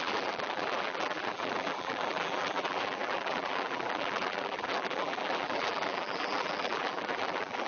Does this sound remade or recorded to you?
remade